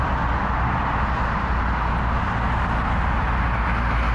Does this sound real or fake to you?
real